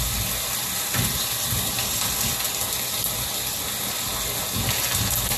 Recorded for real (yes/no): yes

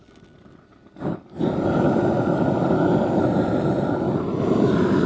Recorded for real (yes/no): yes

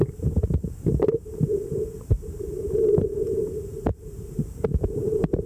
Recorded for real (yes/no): no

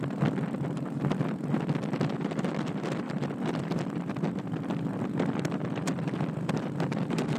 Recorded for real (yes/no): no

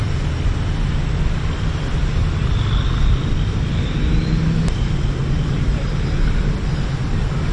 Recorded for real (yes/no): yes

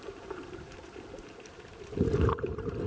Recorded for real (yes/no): no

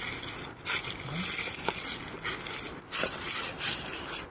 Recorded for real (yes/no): yes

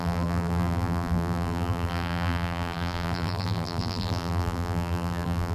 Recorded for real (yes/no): no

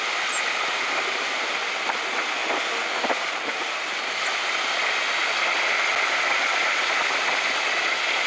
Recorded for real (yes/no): yes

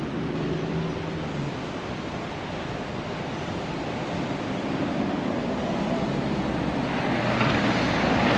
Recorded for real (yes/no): yes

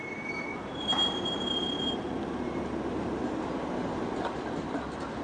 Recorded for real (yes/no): no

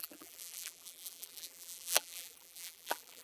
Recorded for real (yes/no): no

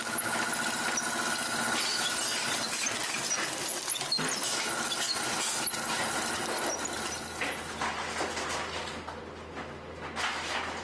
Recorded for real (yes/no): yes